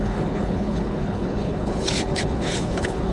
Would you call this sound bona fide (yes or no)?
no